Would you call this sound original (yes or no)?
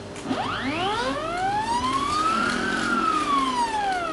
yes